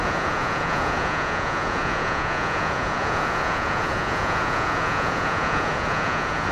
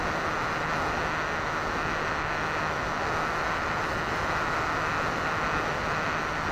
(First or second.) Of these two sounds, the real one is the second